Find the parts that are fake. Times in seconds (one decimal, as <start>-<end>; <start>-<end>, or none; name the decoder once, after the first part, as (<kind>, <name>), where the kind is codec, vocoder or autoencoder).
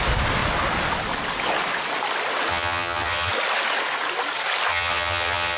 2.5-3.3 (vocoder, HiFi-GAN); 4.7-5.6